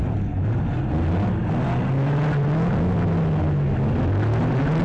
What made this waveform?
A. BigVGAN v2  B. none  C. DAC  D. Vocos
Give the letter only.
B